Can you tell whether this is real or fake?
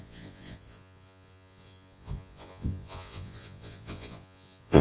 fake